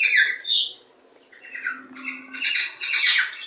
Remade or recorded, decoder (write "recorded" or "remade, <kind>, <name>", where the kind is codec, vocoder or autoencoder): recorded